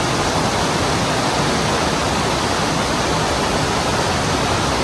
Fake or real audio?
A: real